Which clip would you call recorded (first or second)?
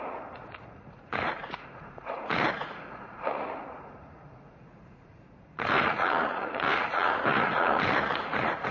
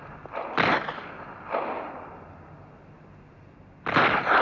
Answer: second